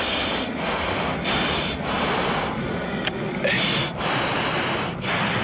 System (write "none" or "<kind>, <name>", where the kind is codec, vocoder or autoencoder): none